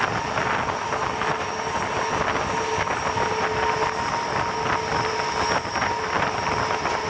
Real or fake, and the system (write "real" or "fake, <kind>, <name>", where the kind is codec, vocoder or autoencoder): real